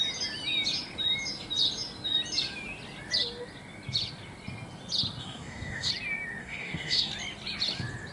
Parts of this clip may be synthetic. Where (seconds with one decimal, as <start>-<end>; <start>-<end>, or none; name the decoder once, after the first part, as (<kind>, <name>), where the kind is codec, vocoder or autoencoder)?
5.2-5.9 (codec, SNAC); 6.4-7.1